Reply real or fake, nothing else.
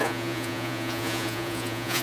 fake